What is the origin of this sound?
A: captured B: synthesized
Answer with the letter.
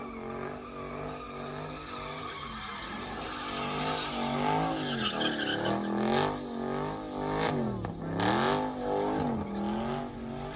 A